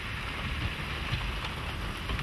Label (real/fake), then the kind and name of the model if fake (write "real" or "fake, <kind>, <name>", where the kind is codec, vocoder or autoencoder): real